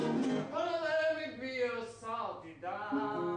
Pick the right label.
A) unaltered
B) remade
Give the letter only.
A